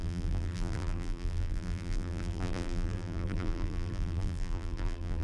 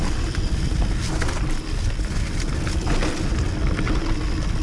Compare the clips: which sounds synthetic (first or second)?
first